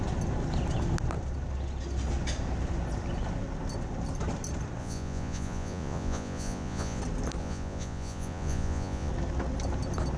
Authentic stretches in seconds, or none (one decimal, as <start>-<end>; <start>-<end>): 0.0-4.8; 7.0-7.4; 9.1-10.2